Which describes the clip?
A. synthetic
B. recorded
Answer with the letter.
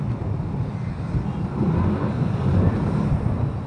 B